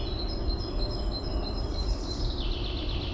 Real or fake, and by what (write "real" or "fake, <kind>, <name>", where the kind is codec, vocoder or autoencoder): real